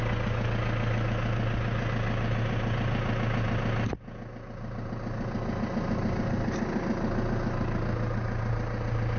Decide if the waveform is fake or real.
real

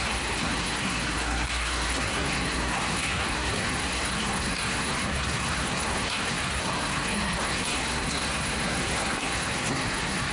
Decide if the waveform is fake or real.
fake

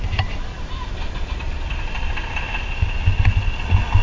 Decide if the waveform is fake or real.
real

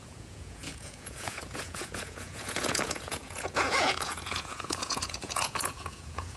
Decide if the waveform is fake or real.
fake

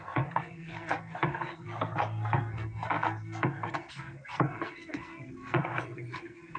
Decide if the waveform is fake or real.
fake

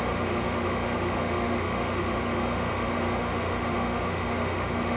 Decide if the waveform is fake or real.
fake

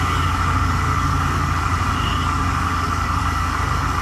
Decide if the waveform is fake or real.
fake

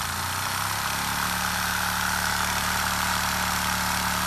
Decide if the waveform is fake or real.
real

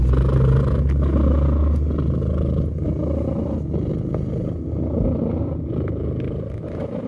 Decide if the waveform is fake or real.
real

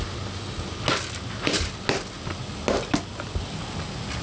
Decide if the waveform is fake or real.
real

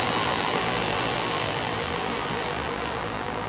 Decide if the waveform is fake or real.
fake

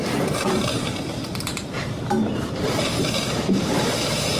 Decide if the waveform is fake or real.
fake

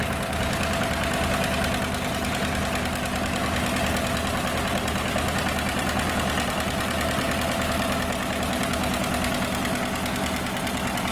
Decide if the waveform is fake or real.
real